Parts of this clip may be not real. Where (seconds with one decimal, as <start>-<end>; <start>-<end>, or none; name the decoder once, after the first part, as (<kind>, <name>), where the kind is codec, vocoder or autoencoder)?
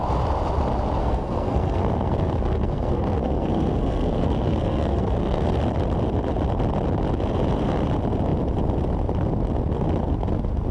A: 1.0-5.6 (codec, SNAC)